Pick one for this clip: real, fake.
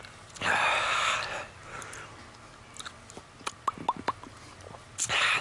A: real